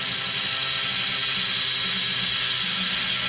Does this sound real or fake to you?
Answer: real